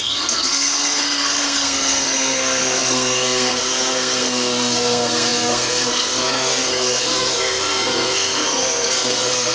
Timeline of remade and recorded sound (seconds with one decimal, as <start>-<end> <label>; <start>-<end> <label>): 0.0-9.5 remade